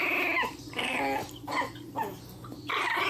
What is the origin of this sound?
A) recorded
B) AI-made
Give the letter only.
A